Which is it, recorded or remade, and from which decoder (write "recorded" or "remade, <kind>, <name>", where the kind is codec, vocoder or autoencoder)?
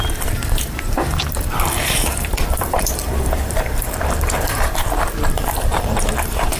remade, vocoder, BigVGAN v2